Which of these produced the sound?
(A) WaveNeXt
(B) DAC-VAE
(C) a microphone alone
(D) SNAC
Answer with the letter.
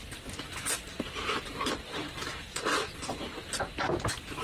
C